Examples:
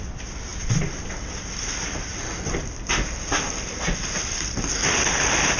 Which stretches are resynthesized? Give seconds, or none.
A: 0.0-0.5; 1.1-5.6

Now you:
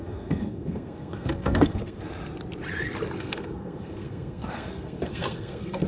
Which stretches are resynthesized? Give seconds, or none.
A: 0.0-2.1; 3.2-5.9